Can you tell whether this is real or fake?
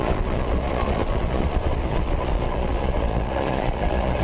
fake